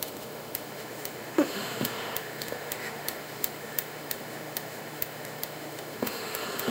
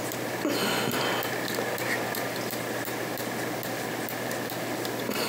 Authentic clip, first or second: second